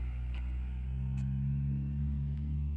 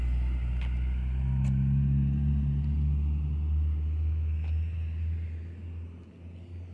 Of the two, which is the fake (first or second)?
first